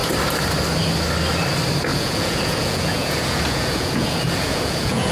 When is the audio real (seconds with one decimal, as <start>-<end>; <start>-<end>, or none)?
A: 0.0-1.9